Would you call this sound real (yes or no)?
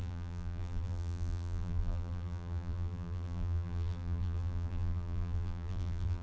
no